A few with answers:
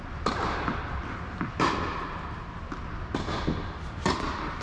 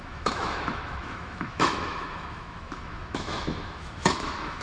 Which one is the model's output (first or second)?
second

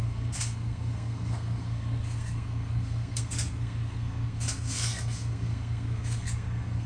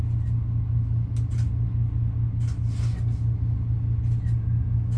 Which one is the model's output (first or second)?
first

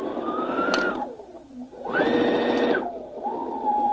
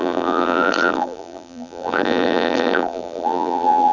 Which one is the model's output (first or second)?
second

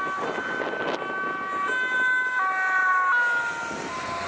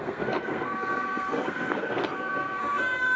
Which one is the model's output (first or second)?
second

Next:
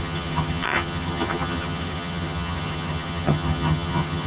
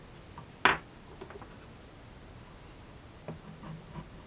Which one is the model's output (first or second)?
first